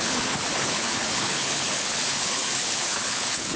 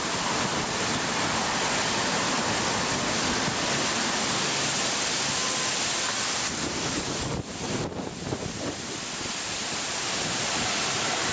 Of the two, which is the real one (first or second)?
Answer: second